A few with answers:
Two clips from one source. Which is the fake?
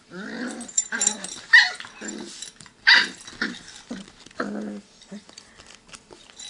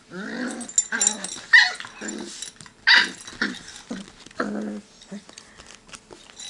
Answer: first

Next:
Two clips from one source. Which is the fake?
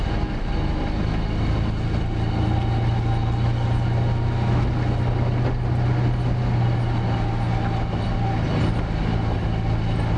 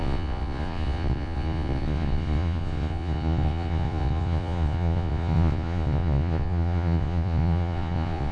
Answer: second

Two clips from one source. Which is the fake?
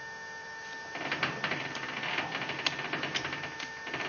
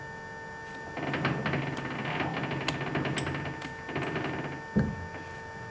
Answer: first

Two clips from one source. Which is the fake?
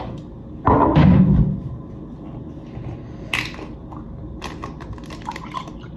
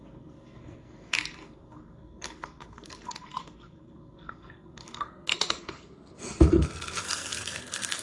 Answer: second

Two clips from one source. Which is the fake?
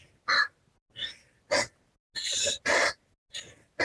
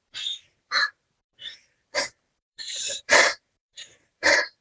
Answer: second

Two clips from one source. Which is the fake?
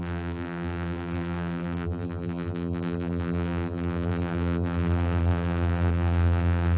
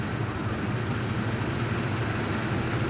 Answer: first